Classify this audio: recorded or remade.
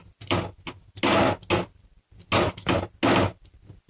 recorded